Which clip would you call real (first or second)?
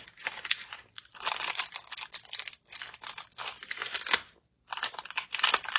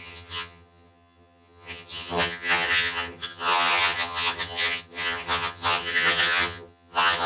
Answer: first